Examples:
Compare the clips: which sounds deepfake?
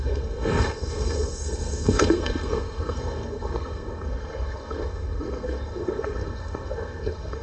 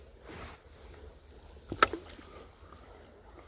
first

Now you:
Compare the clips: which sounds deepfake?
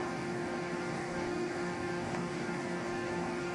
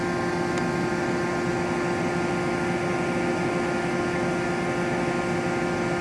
first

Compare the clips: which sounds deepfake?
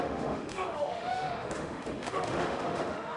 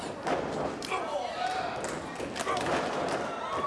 first